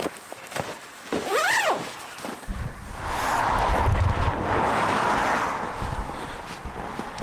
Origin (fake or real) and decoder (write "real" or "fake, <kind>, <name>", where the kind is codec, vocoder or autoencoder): real